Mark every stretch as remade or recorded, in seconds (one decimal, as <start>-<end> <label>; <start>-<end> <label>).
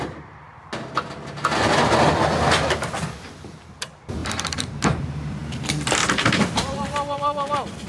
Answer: 0.0-0.5 remade; 0.5-3.5 recorded; 3.5-7.9 remade